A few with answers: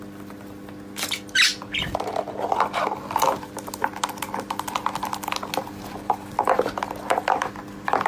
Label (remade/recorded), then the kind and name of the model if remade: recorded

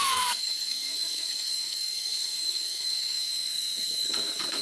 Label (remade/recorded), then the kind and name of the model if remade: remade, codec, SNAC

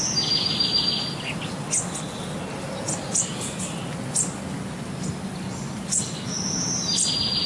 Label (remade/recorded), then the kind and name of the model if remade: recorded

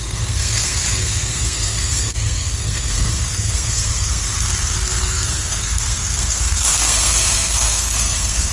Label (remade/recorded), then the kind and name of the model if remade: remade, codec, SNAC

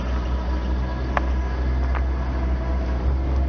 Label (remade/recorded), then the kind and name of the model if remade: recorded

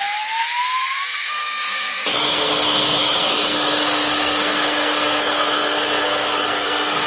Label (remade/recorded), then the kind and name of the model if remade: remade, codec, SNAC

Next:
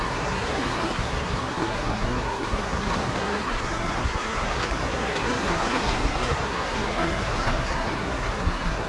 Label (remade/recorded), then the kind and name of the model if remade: remade, codec, SNAC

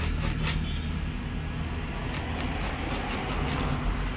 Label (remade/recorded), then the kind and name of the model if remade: recorded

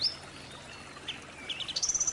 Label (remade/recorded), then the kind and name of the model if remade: recorded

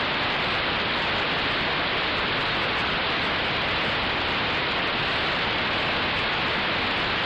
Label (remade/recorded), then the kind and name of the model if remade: recorded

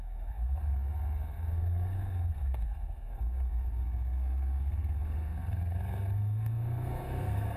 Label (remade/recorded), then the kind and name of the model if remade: remade, codec, SNAC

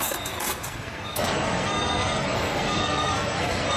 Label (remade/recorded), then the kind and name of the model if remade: remade, codec, SNAC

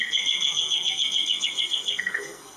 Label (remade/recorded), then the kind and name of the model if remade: remade, codec, SNAC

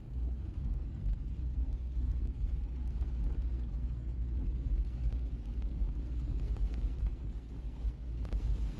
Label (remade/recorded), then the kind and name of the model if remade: remade, codec, SNAC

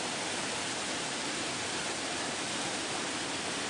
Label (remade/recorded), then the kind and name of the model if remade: recorded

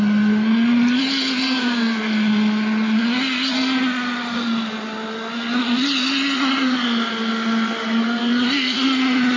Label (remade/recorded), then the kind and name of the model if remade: recorded